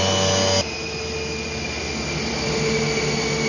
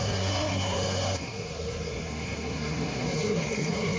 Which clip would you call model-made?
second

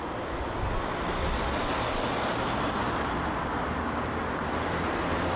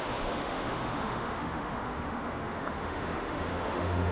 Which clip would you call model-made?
second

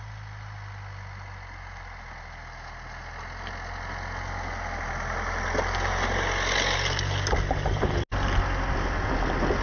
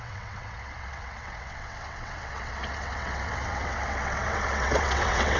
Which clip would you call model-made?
second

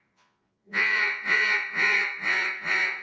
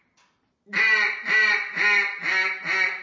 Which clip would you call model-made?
first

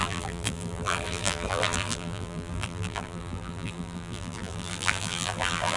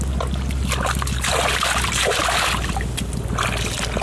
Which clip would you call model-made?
first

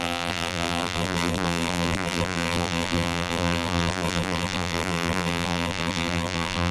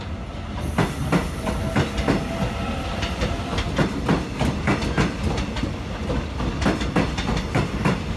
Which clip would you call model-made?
first